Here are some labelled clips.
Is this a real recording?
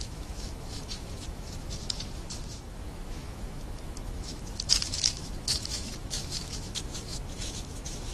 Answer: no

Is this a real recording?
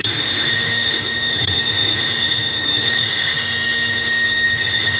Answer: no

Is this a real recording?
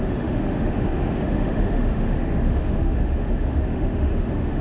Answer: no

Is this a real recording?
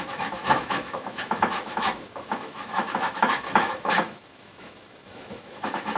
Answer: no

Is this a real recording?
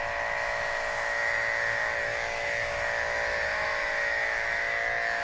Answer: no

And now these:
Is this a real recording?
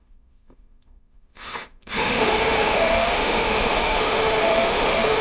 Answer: no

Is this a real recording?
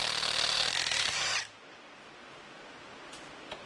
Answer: yes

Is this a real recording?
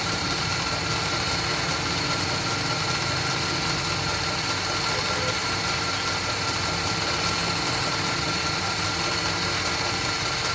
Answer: yes